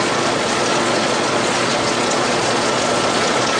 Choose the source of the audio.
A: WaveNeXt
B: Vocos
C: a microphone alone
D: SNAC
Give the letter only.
B